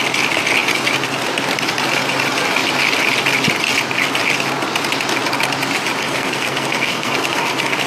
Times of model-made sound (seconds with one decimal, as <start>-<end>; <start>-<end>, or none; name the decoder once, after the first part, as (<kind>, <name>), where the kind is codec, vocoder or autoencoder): 6.0-7.9 (codec, SNAC)